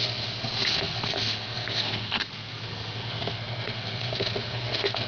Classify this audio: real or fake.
fake